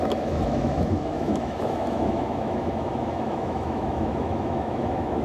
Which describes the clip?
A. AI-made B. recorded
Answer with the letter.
A